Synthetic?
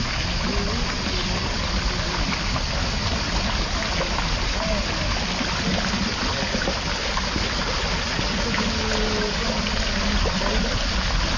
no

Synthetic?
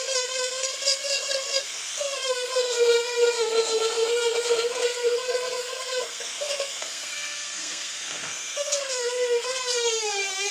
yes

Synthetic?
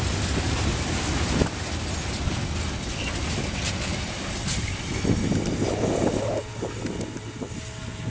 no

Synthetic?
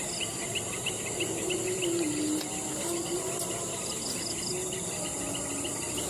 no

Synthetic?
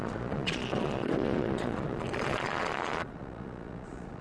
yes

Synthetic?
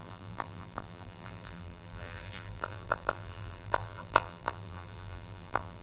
yes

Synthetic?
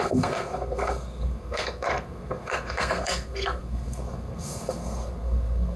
yes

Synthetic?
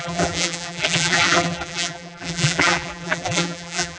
yes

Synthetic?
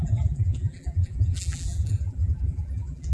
yes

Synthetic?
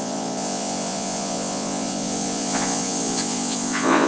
yes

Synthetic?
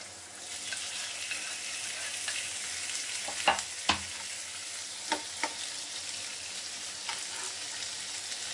no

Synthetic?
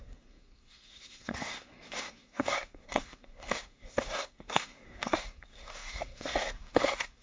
yes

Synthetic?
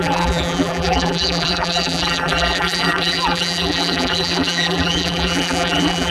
yes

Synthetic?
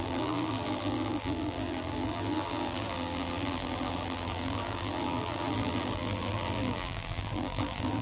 yes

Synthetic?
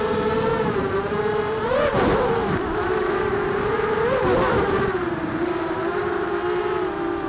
yes